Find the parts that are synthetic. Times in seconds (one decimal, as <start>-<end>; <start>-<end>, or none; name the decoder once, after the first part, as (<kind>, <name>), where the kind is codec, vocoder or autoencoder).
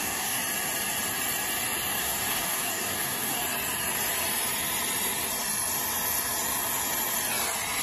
0.0-0.4 (codec, DAC); 2.0-3.4